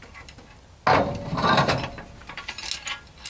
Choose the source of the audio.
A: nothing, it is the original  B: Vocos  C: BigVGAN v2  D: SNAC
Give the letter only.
A